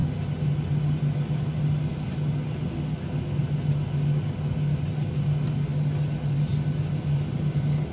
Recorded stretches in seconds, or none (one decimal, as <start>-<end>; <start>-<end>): 0.0-7.9